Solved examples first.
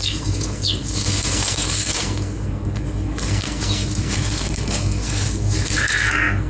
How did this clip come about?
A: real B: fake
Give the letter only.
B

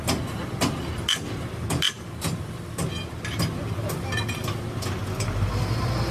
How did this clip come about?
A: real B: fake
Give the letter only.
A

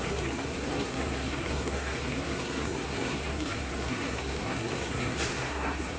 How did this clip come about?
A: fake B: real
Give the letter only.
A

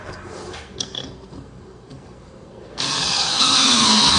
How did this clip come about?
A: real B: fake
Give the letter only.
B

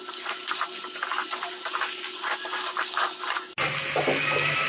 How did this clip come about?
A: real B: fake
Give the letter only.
A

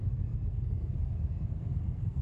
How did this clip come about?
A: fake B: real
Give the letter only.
A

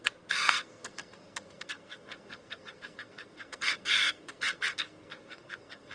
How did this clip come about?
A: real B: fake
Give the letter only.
B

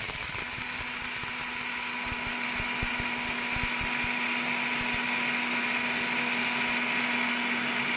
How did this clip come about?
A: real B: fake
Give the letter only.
A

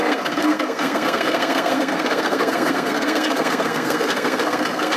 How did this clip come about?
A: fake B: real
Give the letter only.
A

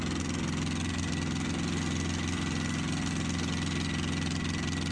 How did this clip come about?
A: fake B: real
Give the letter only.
B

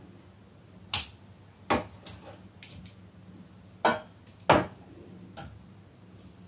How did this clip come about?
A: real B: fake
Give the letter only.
A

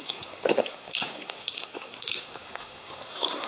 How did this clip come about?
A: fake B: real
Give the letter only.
A